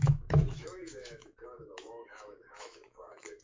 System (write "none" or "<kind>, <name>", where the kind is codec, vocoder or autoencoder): autoencoder, DAC-VAE